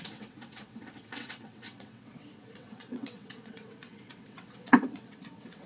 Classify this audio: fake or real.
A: fake